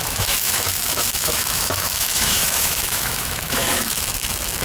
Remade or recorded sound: remade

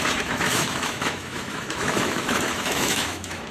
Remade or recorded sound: remade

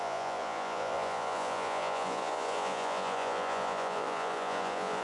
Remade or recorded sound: remade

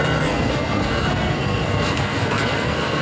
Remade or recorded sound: remade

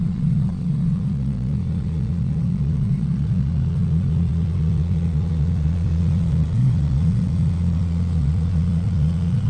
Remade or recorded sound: remade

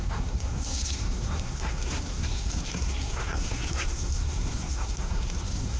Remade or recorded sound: remade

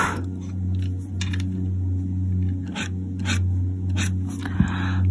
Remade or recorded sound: recorded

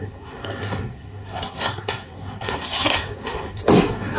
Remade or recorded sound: remade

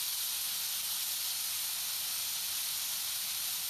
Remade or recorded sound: recorded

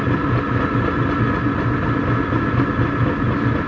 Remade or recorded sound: recorded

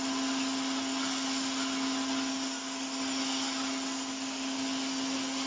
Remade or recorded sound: recorded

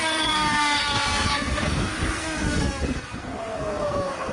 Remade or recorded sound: remade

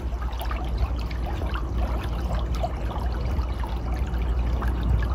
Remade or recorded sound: recorded